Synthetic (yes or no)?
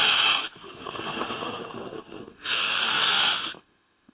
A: yes